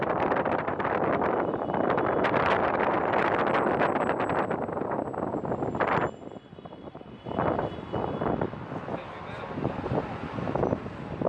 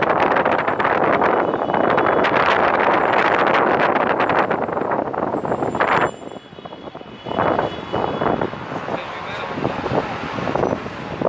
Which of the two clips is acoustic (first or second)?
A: second